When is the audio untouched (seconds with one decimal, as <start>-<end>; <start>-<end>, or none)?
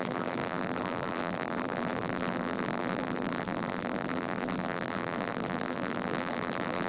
none